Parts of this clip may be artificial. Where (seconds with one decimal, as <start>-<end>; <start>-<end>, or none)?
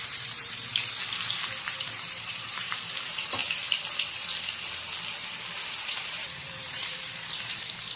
0.0-0.7; 1.6-3.4; 5.8-8.0